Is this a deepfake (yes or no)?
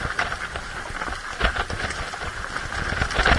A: no